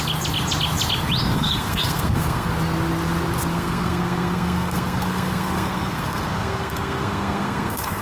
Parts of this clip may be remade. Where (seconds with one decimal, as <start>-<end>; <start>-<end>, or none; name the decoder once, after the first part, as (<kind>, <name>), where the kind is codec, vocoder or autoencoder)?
1.3-2.5 (codec, SNAC); 3.5-8.0